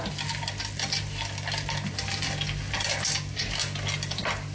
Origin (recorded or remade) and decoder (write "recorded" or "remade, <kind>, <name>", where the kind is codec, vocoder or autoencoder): recorded